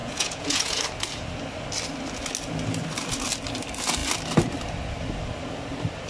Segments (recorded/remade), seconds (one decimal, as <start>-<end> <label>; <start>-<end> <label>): 0.0-0.8 remade; 0.8-6.1 recorded